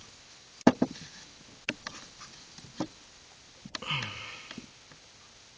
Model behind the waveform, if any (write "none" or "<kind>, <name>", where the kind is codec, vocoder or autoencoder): none